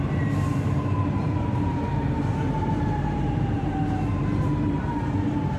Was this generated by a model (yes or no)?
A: yes